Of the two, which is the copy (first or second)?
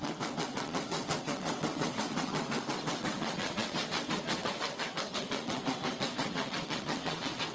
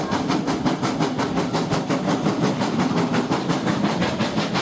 first